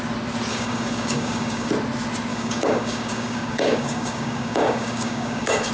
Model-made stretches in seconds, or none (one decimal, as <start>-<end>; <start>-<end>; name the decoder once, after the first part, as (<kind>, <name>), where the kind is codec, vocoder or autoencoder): 0.5-1.7 (codec, DAC); 2.3-5.7